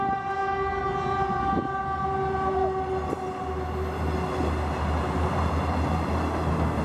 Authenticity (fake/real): real